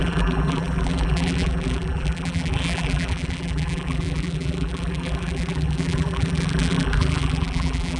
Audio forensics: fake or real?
fake